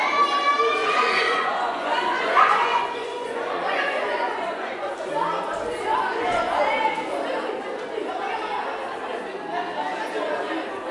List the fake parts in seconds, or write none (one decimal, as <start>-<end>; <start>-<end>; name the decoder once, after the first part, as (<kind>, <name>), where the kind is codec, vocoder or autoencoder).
0.8-4.9 (vocoder, Vocos); 5.9-6.6